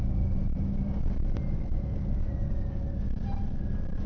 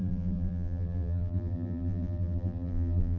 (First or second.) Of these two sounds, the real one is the first